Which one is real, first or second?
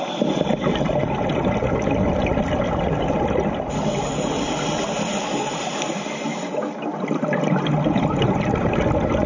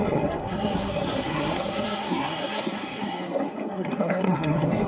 first